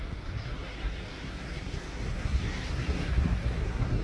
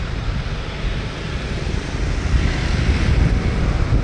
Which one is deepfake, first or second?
first